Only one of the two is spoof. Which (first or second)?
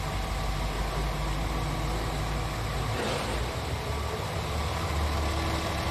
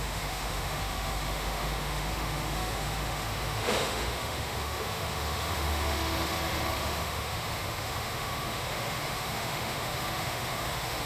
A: second